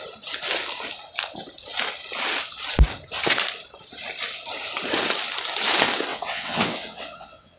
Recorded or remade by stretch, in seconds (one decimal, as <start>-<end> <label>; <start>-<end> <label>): 0.0-6.1 recorded; 6.1-7.6 remade